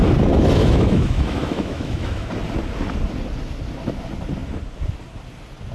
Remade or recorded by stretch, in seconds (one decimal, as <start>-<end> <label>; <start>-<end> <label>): 0.0-0.6 recorded; 0.6-2.3 remade; 2.3-5.7 recorded